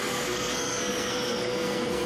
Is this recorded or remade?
remade